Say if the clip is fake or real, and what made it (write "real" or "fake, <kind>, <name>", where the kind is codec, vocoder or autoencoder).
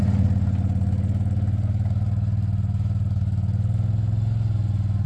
real